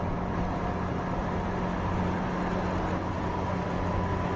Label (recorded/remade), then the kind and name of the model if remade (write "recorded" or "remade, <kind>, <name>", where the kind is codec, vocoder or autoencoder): recorded